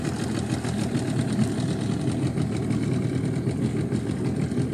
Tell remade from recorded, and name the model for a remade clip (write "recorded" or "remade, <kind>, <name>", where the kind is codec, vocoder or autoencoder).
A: recorded